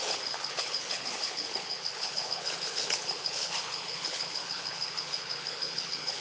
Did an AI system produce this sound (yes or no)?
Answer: yes